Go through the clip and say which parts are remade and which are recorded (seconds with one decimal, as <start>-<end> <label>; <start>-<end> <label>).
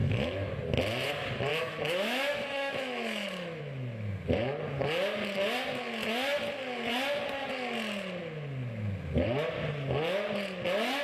0.0-0.5 remade; 0.5-1.5 recorded; 1.5-3.6 remade; 3.6-11.0 recorded